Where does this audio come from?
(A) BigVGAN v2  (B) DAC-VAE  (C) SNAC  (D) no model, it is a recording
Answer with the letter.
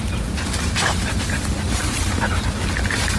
D